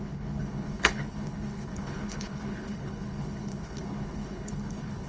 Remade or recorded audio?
remade